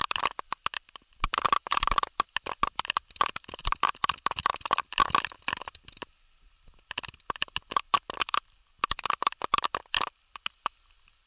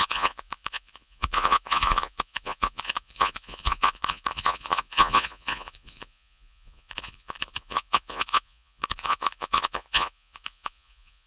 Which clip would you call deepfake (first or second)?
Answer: second